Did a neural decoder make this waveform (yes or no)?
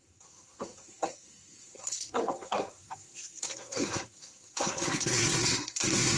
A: yes